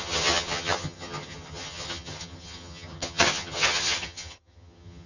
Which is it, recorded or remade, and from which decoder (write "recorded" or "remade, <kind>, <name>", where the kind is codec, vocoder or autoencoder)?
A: remade, vocoder, HiFi-GAN